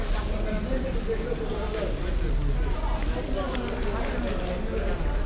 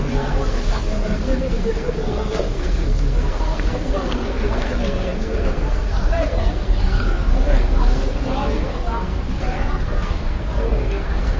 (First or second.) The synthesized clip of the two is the second